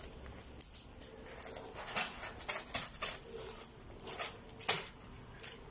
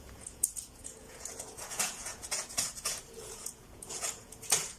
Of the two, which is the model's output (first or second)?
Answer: second